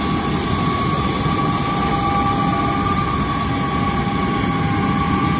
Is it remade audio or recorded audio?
recorded